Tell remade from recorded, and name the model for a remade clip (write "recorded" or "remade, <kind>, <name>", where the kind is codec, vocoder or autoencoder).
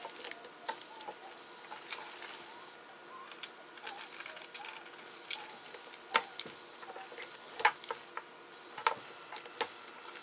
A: recorded